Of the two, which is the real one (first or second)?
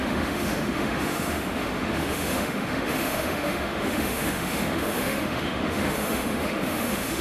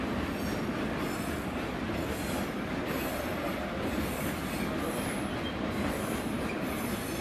second